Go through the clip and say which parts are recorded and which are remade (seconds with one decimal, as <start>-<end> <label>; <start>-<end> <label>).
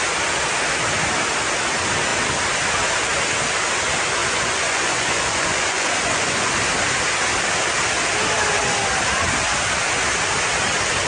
0.0-4.2 recorded; 4.2-6.5 remade; 6.5-11.1 recorded